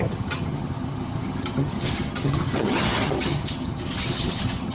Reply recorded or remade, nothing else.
remade